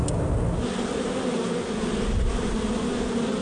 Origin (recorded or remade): recorded